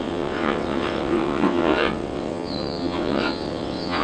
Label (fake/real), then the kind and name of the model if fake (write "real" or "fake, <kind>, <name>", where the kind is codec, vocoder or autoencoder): fake, vocoder, WaveNeXt